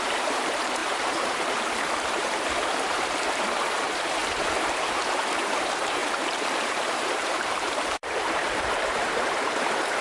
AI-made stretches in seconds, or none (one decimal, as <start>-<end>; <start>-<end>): 0.0-10.0

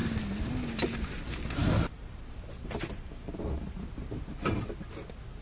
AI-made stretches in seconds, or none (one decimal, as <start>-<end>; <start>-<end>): 1.6-4.8

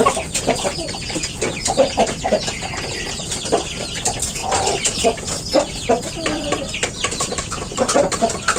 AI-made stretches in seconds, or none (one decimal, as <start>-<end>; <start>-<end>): 0.0-8.6

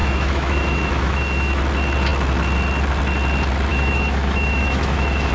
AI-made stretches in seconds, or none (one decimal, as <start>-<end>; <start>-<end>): 0.0-1.6; 3.7-5.3

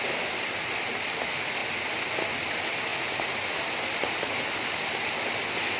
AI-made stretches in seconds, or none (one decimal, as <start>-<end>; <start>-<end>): none